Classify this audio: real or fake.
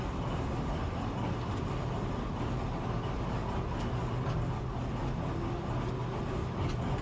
real